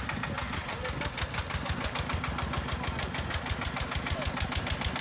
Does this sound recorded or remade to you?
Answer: recorded